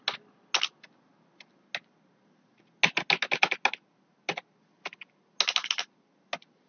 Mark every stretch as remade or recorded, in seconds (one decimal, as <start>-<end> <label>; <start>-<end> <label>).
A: 0.0-6.7 recorded